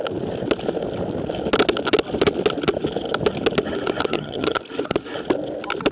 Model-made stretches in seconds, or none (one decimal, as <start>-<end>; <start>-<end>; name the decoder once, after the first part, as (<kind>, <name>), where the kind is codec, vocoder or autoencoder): 4.1-4.6 (vocoder, HiFi-GAN)

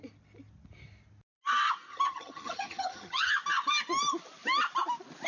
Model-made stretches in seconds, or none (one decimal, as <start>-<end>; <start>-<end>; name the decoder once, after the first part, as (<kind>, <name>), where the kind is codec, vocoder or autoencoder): 1.9-3.3 (vocoder, HiFi-GAN)